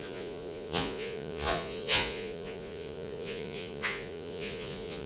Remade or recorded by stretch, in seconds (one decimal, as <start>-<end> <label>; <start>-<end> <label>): 0.0-5.1 remade